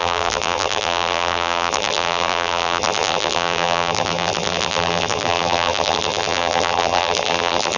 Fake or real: fake